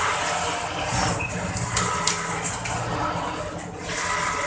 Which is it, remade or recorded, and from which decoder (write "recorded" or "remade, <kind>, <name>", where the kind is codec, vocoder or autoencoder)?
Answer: recorded